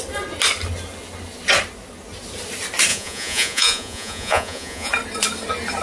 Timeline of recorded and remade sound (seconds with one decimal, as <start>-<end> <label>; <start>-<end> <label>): 0.0-2.9 recorded; 2.9-4.9 remade; 4.9-5.8 recorded